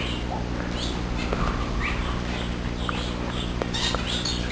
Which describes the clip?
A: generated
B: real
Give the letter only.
B